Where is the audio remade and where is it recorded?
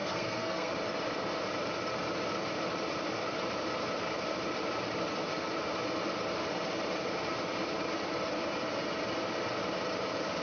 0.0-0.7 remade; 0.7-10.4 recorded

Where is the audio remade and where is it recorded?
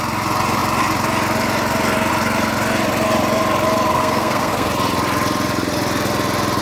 0.0-3.9 recorded; 3.9-4.7 remade; 4.7-6.6 recorded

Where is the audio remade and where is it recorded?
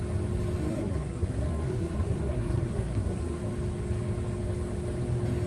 0.0-0.7 recorded; 0.7-3.4 remade; 3.4-5.5 recorded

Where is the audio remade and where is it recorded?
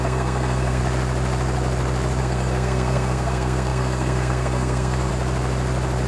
0.0-0.8 remade; 0.8-2.2 recorded; 2.2-5.1 remade; 5.1-6.1 recorded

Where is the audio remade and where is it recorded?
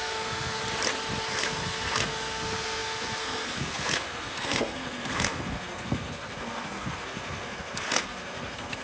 0.0-0.6 remade; 0.6-1.2 recorded; 1.2-8.8 remade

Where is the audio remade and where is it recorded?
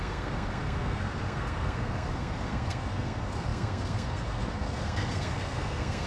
0.0-6.1 remade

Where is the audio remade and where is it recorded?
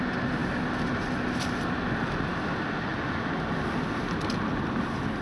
0.0-5.2 recorded